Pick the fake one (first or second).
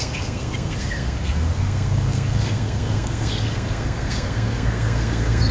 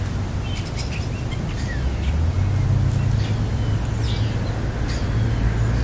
first